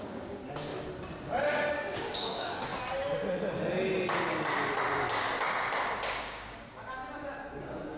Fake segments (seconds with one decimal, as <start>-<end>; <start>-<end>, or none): 0.0-0.7; 1.5-2.7; 6.2-7.0; 7.6-8.0